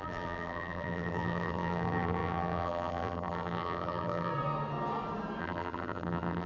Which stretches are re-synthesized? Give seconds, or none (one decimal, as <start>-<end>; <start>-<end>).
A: 0.0-4.3; 5.4-6.5